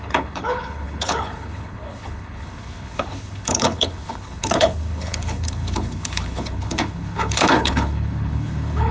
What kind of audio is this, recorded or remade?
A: remade